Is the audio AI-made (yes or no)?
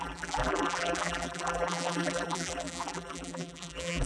yes